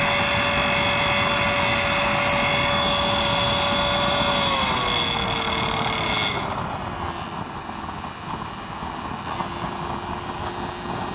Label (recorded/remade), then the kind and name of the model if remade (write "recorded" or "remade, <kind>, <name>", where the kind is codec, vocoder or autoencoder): recorded